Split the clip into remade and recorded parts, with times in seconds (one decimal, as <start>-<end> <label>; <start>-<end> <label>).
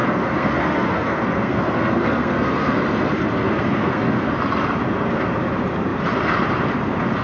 0.0-4.3 remade; 4.3-7.2 recorded